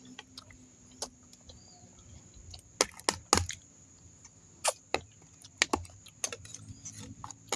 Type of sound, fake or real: real